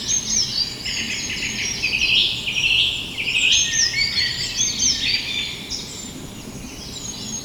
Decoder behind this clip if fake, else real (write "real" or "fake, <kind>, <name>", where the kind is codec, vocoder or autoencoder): real